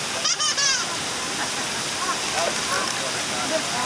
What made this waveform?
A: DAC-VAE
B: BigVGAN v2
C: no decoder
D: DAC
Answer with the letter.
C